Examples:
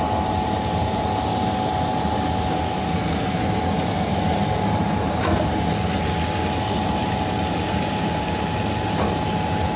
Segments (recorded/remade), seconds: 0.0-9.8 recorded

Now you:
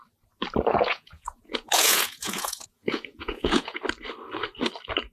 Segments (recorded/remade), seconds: 0.0-0.7 recorded; 0.7-3.8 remade; 3.8-5.1 recorded

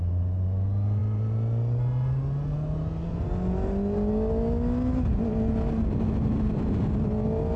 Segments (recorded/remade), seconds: 0.0-7.6 recorded

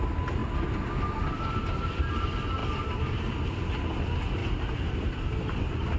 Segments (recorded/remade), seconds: 0.0-0.4 recorded; 0.4-2.2 remade; 2.2-2.6 recorded; 2.6-3.2 remade; 3.2-4.4 recorded; 4.4-5.2 remade; 5.2-6.0 recorded